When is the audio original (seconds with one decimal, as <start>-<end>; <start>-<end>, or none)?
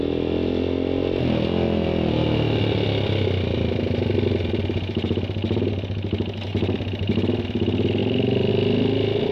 0.0-9.3